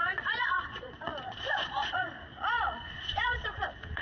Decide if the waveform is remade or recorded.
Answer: remade